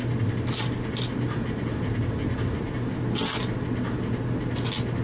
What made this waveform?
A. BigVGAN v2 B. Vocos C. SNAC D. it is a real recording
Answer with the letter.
D